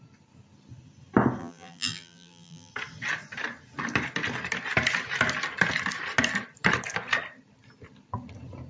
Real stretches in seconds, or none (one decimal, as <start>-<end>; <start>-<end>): 0.0-1.4; 2.7-8.7